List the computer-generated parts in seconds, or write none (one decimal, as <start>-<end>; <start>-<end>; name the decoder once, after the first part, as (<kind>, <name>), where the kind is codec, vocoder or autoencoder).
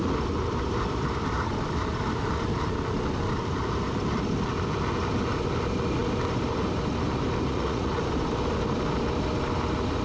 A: 7.5-8.0 (vocoder, Vocos)